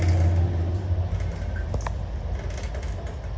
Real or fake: real